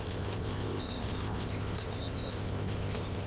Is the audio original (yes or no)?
no